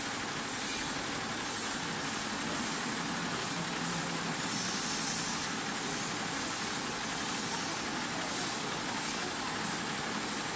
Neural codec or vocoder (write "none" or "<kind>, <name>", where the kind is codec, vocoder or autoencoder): none